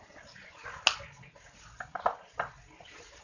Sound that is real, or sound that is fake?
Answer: real